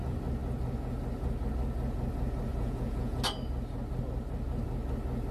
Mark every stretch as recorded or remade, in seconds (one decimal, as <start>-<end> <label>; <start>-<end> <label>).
0.0-2.5 recorded; 2.5-3.2 remade; 3.2-5.3 recorded